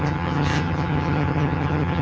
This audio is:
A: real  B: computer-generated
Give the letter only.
B